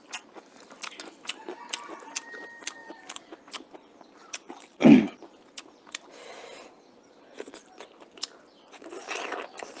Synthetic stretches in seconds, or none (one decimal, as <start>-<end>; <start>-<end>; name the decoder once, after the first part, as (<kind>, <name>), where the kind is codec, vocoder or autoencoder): 2.8-3.4 (vocoder, BigVGAN v2)